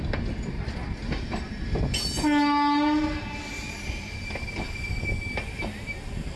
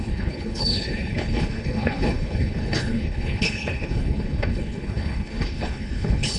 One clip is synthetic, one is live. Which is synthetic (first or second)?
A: second